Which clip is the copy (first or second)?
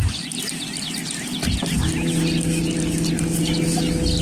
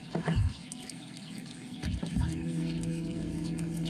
second